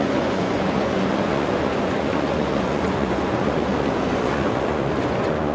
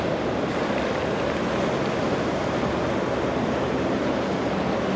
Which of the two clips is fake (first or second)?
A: first